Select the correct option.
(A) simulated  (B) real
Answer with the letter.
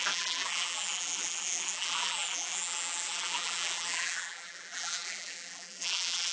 A